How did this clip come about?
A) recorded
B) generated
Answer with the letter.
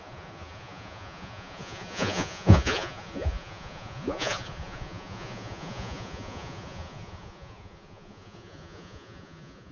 B